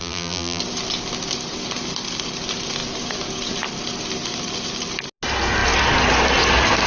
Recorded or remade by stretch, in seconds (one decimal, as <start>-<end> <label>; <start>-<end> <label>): 0.0-0.6 remade; 0.6-6.9 recorded